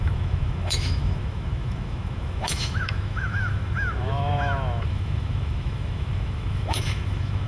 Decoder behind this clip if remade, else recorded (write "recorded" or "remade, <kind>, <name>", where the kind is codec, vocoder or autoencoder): remade, autoencoder, DAC-VAE